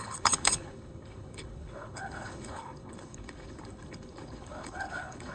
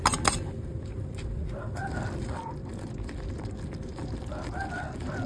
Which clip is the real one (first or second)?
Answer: second